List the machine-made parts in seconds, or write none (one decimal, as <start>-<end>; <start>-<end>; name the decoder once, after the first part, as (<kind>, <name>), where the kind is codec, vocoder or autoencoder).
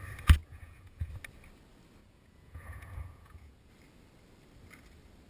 0.4-1.1 (vocoder, Vocos); 2.0-3.7